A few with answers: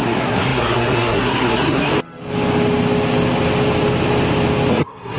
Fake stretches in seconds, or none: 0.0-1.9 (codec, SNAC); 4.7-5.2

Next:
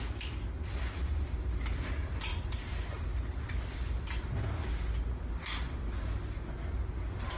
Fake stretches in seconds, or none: none

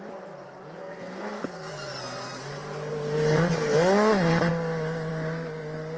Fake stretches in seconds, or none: 0.8-1.7 (codec, SNAC)